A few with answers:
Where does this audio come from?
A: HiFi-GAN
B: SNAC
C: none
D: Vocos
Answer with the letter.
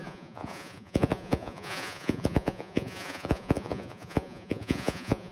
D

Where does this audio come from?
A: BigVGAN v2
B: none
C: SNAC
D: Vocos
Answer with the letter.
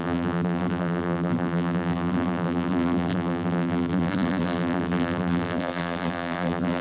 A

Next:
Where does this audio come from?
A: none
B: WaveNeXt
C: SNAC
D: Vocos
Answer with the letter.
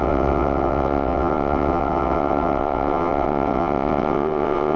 B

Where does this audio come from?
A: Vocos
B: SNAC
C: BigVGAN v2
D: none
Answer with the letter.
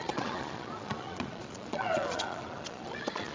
A